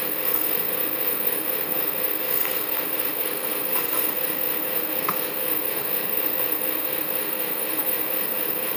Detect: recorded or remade remade